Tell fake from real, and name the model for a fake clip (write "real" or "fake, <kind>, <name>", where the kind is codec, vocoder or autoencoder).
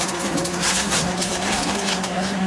fake, codec, SNAC